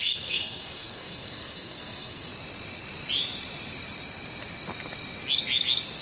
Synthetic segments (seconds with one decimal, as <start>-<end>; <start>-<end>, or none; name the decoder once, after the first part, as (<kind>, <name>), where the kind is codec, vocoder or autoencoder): 0.0-2.3 (codec, SNAC)